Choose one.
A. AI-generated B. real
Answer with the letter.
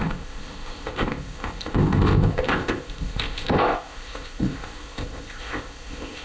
A